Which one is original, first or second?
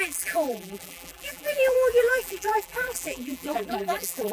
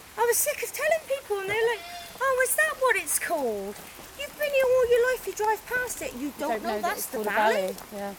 second